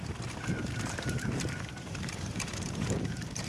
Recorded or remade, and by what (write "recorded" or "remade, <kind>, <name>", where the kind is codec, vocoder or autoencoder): remade, vocoder, BigVGAN v2